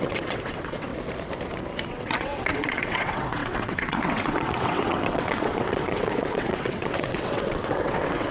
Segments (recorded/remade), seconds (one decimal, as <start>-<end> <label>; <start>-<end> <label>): 0.0-0.9 remade; 0.9-1.9 recorded; 1.9-8.3 remade